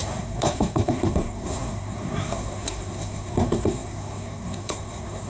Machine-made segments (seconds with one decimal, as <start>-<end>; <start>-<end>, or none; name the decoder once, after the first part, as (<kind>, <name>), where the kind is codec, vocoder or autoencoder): 0.0-5.3 (codec, SNAC)